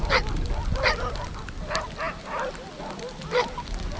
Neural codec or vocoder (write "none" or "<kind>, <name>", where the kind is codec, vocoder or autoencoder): none